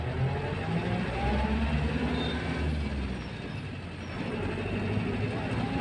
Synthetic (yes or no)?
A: no